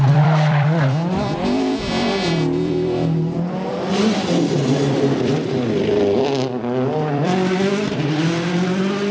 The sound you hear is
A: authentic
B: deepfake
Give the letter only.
B